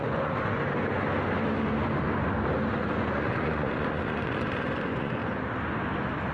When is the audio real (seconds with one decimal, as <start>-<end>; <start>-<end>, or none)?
0.6-2.7; 5.2-6.3